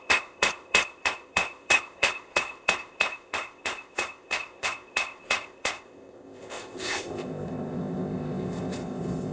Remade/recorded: remade